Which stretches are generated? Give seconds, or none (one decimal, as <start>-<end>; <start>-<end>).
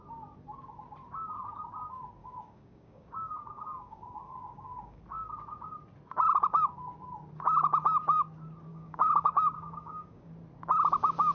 2.2-5.0; 8.7-10.3